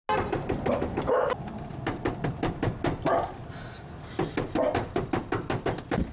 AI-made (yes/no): no